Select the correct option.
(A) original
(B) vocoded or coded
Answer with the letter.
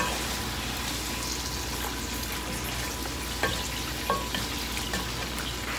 A